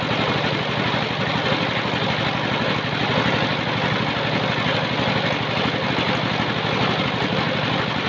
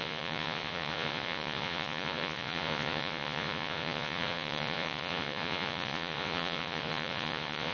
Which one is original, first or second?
first